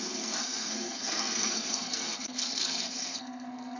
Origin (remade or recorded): remade